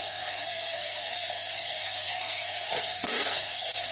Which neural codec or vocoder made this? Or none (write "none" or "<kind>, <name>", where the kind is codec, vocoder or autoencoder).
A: codec, SNAC